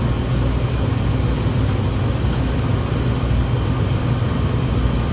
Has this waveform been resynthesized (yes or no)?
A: no